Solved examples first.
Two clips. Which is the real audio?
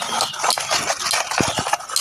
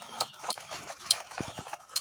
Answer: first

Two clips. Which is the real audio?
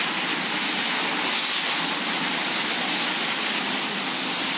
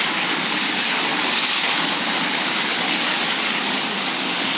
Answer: first